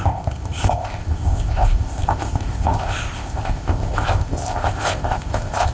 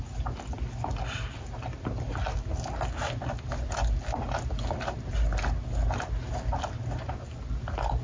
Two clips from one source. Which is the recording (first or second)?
second